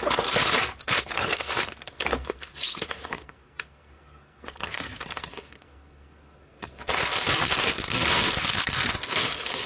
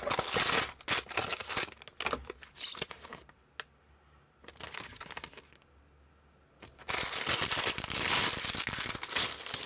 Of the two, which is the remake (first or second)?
first